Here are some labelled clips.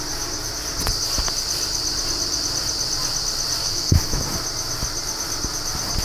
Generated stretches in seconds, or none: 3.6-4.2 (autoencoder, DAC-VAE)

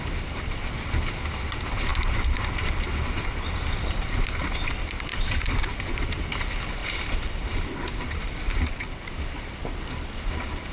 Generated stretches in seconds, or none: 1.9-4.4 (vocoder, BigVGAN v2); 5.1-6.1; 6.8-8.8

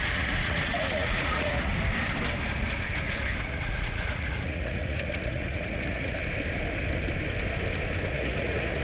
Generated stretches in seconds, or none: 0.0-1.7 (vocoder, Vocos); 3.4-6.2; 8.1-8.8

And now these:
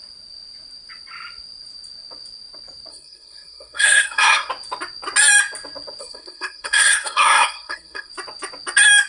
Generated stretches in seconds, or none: 2.9-4.5 (codec, SNAC); 6.0-8.1

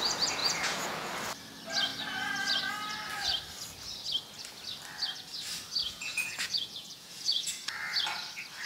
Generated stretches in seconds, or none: 0.4-1.1 (vocoder, Vocos); 5.8-7.5